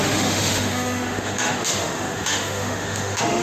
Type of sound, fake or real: fake